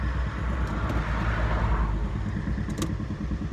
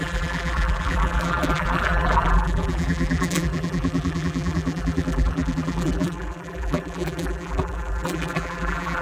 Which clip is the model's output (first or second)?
second